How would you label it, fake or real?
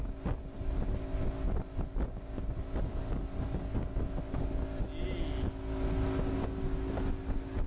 real